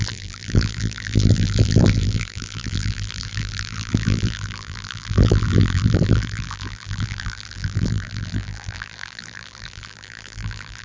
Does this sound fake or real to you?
fake